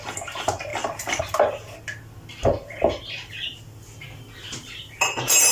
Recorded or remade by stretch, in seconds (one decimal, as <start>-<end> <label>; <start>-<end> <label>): 0.0-5.5 recorded